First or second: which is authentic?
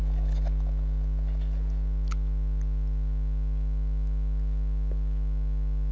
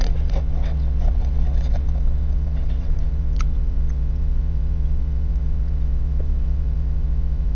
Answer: first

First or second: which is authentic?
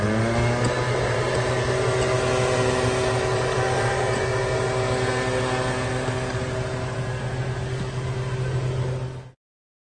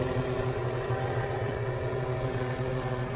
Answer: first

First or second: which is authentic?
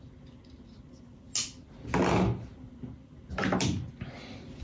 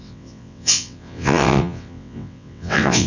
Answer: first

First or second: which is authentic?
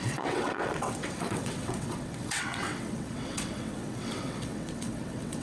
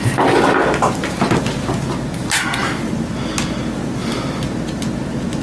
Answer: second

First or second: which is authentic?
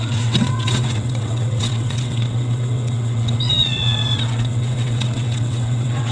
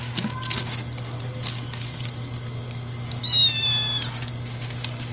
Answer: second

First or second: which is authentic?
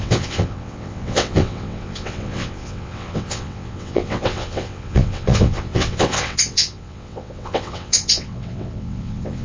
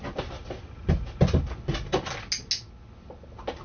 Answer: second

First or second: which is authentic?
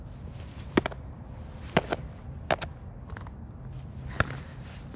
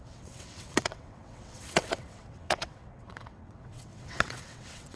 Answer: first